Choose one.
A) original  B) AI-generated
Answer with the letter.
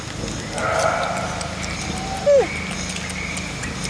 A